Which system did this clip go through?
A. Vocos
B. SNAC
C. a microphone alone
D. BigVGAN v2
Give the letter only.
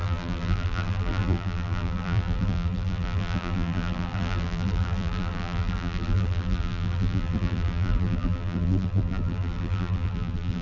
D